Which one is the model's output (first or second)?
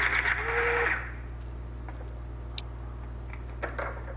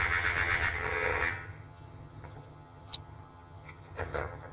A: second